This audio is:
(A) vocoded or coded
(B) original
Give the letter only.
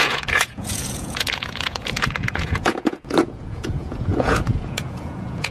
A